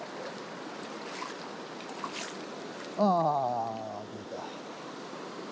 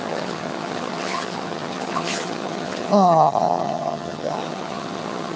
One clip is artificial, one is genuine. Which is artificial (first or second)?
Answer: second